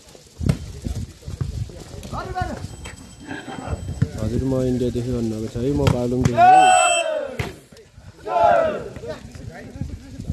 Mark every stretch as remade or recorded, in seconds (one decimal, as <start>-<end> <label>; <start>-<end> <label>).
0.0-2.7 recorded; 2.7-4.0 remade; 4.0-10.3 recorded